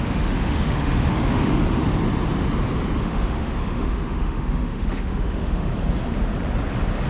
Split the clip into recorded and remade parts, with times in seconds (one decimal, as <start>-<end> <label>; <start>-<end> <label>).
0.0-1.8 remade; 1.8-3.0 recorded; 3.0-5.7 remade; 5.7-7.1 recorded